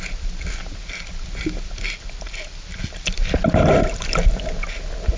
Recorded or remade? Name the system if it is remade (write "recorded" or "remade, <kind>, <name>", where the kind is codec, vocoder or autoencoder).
recorded